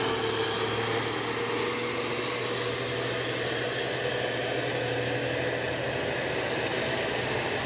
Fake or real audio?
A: real